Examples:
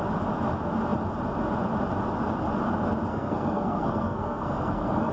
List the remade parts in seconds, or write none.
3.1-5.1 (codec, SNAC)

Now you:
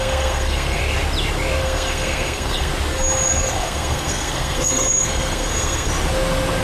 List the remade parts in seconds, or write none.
0.0-0.8 (codec, SNAC); 1.6-2.7; 3.3-5.9

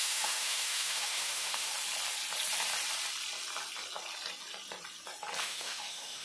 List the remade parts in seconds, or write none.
0.0-1.7 (autoencoder, DAC-VAE); 5.4-6.2

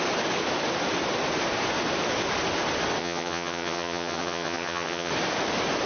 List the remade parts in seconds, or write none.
3.0-5.1 (vocoder, HiFi-GAN)

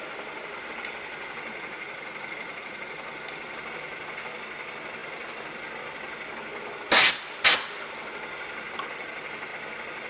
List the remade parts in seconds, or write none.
1.5-2.8 (vocoder, Vocos)